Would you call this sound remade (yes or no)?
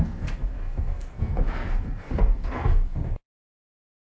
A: yes